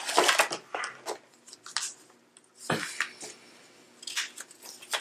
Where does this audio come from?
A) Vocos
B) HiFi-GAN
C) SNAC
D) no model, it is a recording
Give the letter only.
D